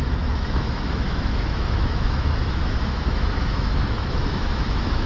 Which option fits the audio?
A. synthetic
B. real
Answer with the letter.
A